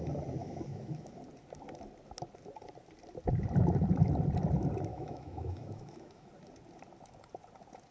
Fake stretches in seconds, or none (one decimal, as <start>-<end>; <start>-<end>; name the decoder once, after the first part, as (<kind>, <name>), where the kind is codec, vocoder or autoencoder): 0.4-1.1 (autoencoder, DAC-VAE); 4.9-6.3